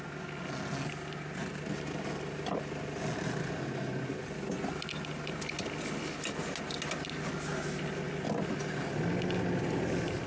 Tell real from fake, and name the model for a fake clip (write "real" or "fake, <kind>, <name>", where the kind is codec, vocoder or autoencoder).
real